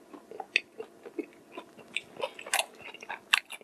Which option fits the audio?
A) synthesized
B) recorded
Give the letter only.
B